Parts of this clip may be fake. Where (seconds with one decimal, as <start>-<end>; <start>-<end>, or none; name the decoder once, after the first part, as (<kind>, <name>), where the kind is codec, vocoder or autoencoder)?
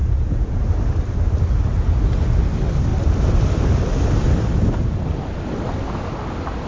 0.0-0.6 (vocoder, Vocos)